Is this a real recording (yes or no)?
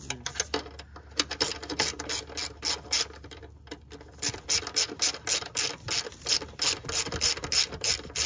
yes